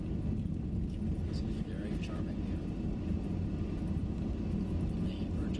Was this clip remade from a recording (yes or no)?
no